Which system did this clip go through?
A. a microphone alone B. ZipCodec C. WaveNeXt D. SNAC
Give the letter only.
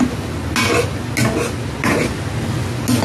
A